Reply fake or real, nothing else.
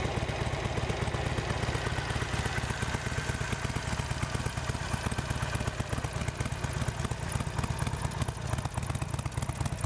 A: real